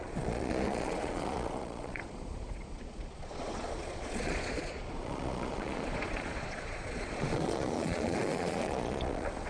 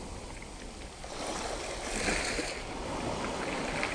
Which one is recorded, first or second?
second